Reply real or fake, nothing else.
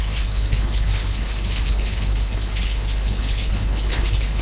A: fake